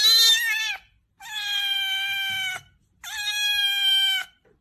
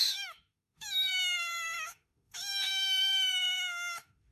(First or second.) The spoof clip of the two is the second